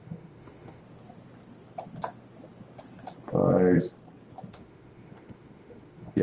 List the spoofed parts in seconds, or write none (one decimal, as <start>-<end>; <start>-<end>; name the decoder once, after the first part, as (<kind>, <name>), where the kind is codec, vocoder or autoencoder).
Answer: 0.0-0.8 (autoencoder, DAC-VAE); 4.5-6.2